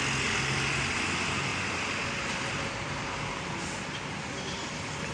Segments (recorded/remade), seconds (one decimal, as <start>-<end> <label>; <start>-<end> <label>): 0.0-1.5 recorded; 1.5-4.2 remade; 4.2-5.1 recorded